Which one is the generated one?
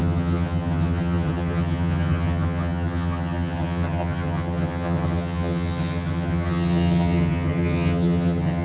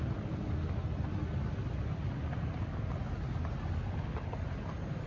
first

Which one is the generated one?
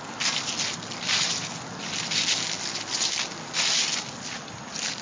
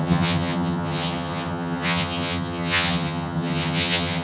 second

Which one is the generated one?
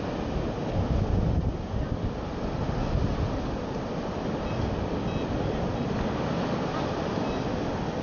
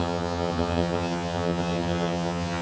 second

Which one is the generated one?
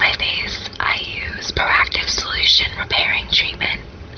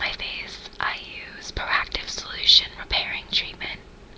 first